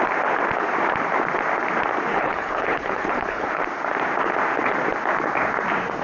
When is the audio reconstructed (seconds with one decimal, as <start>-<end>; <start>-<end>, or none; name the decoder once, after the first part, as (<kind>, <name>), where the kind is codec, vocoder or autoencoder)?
2.1-3.6 (codec, HILCodec)